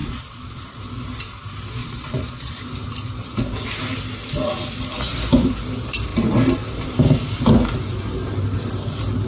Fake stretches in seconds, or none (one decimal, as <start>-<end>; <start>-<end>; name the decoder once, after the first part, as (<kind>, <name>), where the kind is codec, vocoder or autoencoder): 0.0-0.8 (vocoder, Vocos); 1.8-2.6